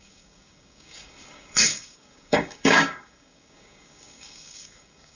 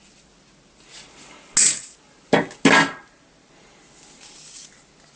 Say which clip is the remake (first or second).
first